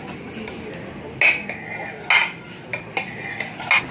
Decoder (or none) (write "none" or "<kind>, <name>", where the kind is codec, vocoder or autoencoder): none